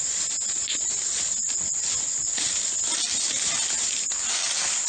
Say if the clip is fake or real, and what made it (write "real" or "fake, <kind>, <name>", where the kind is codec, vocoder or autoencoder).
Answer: real